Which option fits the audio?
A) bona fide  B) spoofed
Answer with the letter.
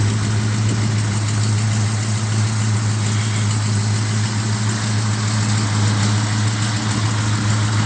A